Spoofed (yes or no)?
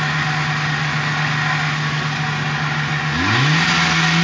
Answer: no